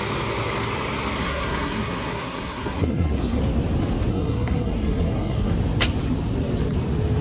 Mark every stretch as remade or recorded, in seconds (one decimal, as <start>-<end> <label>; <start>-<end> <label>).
0.0-1.2 recorded; 1.2-3.4 remade; 3.4-4.1 recorded; 4.1-5.5 remade; 5.5-7.2 recorded